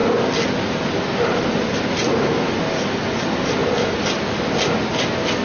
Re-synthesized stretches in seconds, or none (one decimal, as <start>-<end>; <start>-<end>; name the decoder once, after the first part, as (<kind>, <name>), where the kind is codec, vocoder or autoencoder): none